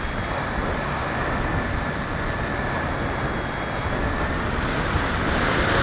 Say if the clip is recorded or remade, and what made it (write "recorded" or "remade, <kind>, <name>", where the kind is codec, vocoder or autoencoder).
recorded